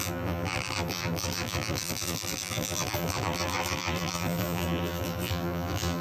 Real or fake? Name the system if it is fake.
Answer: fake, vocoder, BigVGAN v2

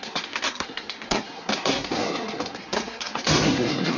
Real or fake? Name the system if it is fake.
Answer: fake, codec, SNAC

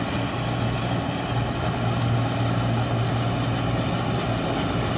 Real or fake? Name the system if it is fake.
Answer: real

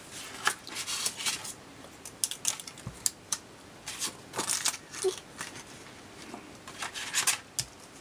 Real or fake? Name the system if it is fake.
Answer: real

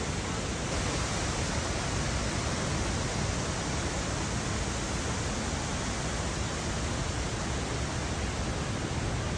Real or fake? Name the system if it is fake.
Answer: real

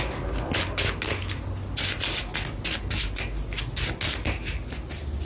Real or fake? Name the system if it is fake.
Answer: real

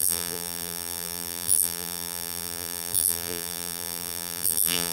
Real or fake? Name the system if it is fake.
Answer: fake, vocoder, BigVGAN v2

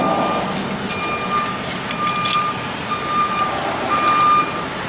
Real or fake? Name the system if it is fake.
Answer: real